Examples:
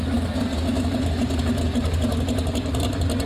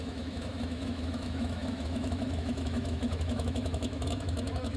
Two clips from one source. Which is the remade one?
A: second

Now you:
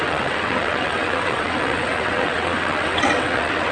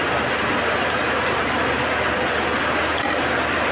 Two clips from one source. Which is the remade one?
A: first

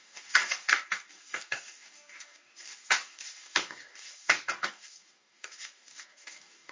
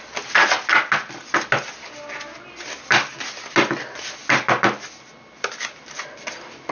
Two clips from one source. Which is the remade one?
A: first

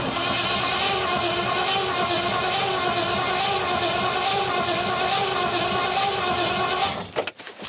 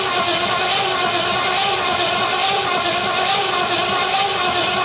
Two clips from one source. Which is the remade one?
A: second